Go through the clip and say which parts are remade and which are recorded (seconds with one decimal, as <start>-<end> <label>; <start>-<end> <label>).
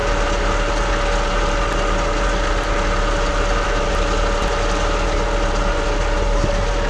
0.0-6.9 recorded